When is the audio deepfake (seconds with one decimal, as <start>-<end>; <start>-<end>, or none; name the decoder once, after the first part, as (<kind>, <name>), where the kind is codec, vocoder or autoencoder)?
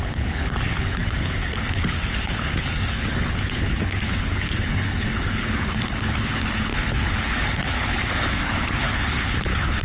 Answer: 0.0-9.8 (codec, HILCodec)